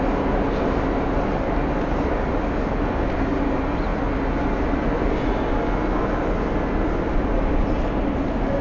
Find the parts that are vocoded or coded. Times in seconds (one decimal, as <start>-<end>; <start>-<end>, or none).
none